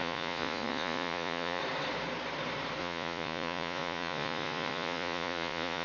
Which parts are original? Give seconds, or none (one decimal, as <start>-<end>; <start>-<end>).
1.6-2.8